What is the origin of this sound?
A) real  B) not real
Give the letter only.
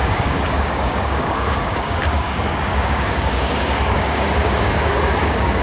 B